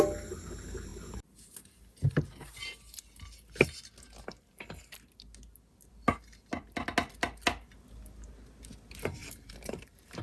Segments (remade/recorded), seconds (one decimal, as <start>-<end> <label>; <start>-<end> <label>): 0.0-9.2 recorded; 9.2-10.2 remade